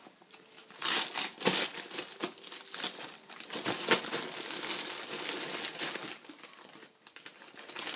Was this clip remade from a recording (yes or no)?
no